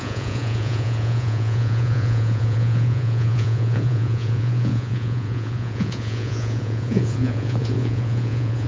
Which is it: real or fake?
fake